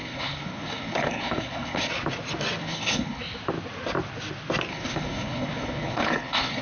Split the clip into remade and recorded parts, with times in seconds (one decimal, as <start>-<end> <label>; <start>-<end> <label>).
0.0-1.9 remade; 1.9-2.6 recorded; 2.6-3.2 remade; 3.2-4.7 recorded; 4.7-6.6 remade